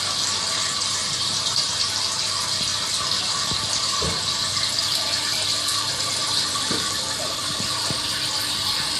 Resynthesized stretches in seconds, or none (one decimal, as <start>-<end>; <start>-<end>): 1.0-2.1; 5.7-8.1